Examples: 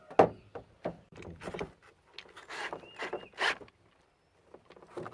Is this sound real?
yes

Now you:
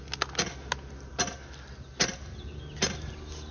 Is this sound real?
yes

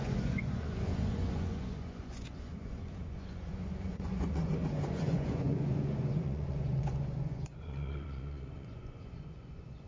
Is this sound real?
no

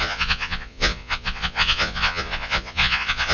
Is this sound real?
no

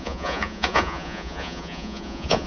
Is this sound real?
no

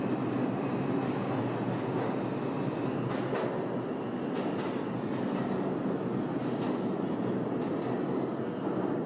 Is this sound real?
yes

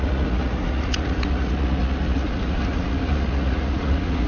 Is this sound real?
no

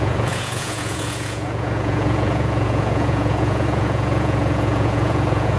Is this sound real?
no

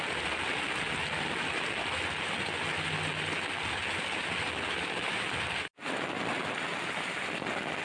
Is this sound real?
yes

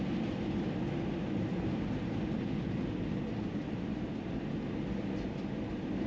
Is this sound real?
yes